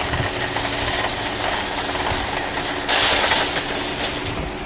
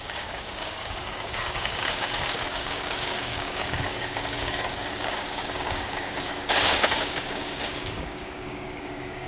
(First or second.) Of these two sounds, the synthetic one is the second